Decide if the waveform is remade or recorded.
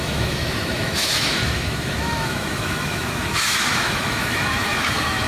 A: remade